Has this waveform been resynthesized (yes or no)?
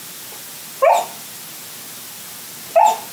no